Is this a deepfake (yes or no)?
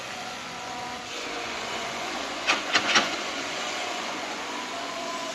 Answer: yes